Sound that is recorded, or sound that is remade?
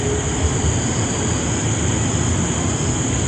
recorded